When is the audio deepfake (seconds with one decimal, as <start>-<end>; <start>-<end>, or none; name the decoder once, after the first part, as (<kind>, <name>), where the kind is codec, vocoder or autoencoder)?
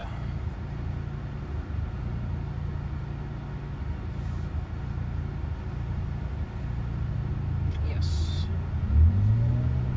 none